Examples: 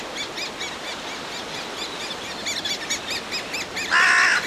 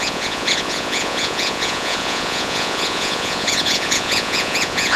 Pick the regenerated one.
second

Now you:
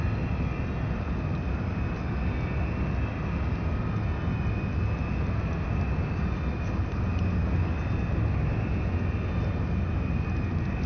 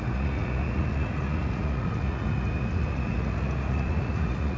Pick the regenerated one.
second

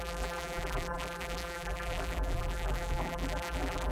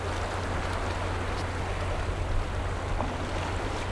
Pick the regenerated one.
first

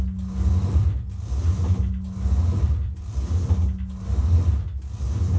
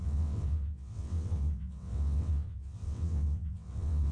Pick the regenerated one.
second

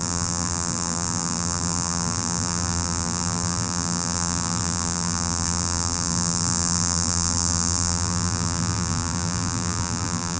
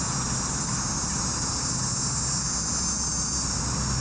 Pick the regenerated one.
first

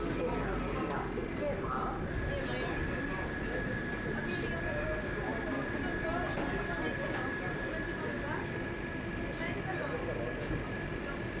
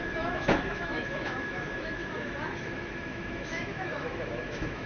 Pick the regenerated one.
second